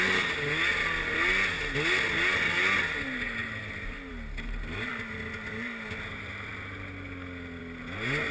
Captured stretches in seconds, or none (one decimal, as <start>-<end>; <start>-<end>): 0.0-8.3